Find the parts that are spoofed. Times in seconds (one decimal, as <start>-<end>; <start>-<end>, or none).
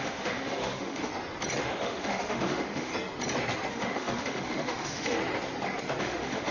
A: 0.0-1.1; 1.6-2.9; 3.7-5.2; 6.0-6.5